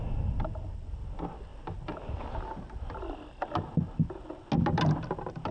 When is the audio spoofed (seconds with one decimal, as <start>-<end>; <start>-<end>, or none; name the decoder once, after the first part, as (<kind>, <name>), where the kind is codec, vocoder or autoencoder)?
none